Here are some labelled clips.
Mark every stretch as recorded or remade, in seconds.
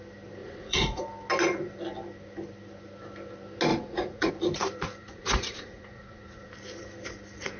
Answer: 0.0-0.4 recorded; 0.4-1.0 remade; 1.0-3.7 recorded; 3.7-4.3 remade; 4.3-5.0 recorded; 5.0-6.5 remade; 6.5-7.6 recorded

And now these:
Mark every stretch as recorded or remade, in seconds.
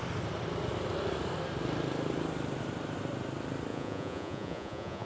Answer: 0.0-3.7 recorded; 3.7-5.1 remade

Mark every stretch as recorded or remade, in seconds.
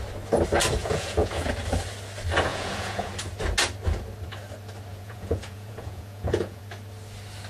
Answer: 0.0-0.8 recorded; 0.8-1.5 remade; 1.5-2.5 recorded; 2.5-3.1 remade; 3.1-4.9 recorded; 4.9-6.6 remade; 6.6-7.5 recorded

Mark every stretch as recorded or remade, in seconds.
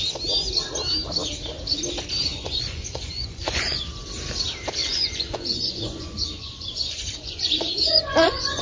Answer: 0.0-2.3 recorded; 2.3-3.8 remade; 3.8-4.8 recorded; 4.8-8.6 remade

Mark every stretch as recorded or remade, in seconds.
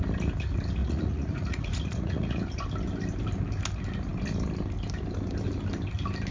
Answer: 0.0-0.8 recorded; 0.8-2.6 remade; 2.6-6.3 recorded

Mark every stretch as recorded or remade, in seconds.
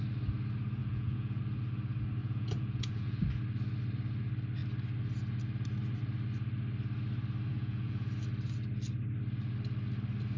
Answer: 0.0-0.8 recorded; 0.8-1.4 remade; 1.4-2.2 recorded; 2.2-3.2 remade; 3.2-7.5 recorded; 7.5-8.1 remade; 8.1-10.4 recorded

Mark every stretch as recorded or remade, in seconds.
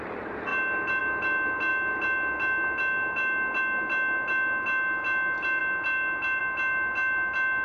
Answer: 0.0-7.6 recorded